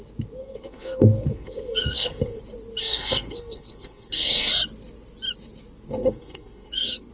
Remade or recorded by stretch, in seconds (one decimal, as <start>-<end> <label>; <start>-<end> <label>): 0.0-0.4 recorded; 0.4-2.4 remade; 2.4-2.8 recorded; 2.8-4.5 remade; 4.5-6.0 recorded; 6.0-7.1 remade

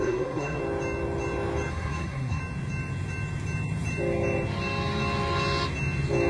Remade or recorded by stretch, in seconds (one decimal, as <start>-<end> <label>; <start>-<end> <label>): 0.0-0.6 remade; 0.6-1.7 recorded; 1.7-2.4 remade; 2.4-6.3 recorded

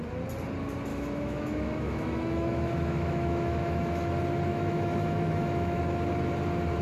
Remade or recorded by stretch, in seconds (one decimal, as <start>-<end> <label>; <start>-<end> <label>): 0.0-0.9 recorded; 0.9-4.1 remade; 4.1-4.5 recorded; 4.5-5.8 remade; 5.8-6.8 recorded

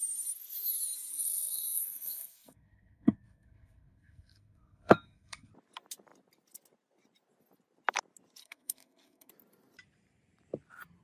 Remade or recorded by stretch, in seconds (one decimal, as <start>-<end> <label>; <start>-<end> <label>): 0.0-1.1 recorded; 1.1-5.5 remade; 5.5-8.4 recorded; 8.4-9.3 remade; 9.3-11.0 recorded

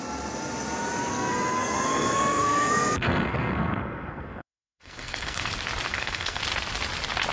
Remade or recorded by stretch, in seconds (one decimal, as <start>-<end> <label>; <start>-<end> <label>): 0.0-1.1 recorded; 1.1-5.5 remade; 5.5-5.9 recorded; 5.9-6.4 remade; 6.4-7.3 recorded

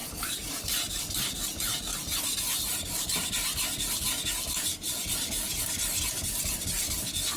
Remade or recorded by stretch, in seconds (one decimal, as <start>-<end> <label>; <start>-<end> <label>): 0.0-1.0 remade; 1.0-7.4 recorded

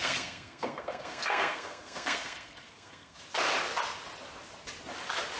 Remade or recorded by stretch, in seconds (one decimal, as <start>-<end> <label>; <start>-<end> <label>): 0.0-3.2 remade; 3.2-5.4 recorded

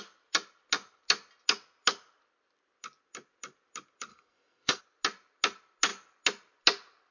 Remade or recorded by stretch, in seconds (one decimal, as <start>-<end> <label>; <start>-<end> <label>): 0.0-4.1 recorded; 4.1-4.8 remade; 4.8-7.1 recorded